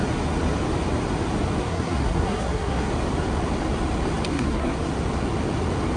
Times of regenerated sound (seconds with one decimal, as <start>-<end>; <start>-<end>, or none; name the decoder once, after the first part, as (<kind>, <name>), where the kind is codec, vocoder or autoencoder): 1.6-2.9 (codec, SNAC); 4.3-4.9